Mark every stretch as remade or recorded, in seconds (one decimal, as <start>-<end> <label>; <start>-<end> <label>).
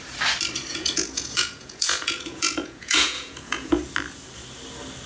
0.0-0.7 recorded; 0.7-3.8 remade; 3.8-5.1 recorded